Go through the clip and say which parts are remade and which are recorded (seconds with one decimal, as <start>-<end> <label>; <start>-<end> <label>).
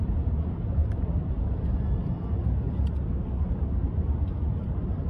0.0-5.1 recorded